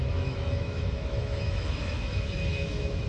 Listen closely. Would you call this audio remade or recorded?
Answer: remade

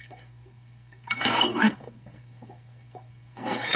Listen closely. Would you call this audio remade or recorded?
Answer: remade